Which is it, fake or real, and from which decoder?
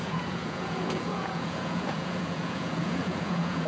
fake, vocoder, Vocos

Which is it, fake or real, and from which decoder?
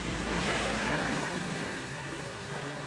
fake, codec, SNAC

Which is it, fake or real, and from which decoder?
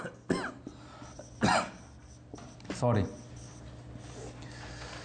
real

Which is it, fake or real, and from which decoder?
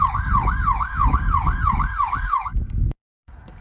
fake, codec, DAC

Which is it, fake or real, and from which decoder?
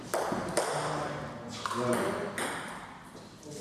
real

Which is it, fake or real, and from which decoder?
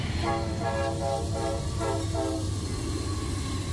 real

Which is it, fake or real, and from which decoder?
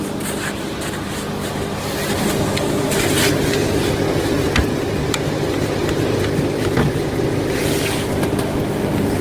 real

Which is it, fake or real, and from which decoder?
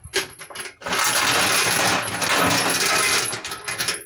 real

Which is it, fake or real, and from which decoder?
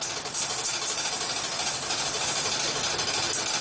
real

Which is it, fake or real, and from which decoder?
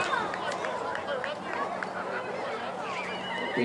real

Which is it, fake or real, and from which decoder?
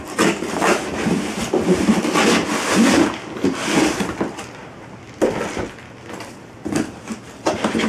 real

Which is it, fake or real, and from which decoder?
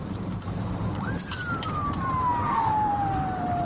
fake, vocoder, BigVGAN v2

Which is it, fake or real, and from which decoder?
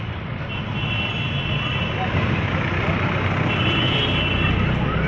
real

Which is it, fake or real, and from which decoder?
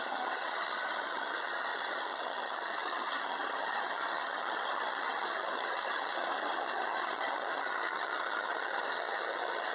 fake, vocoder, HiFi-GAN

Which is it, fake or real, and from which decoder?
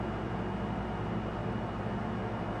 real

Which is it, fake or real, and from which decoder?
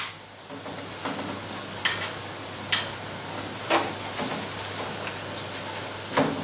real